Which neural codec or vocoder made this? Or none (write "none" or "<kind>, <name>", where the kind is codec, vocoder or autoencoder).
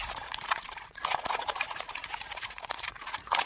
vocoder, Vocos